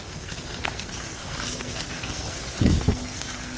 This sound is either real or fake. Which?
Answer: fake